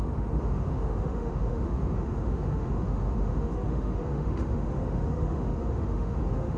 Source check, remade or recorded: remade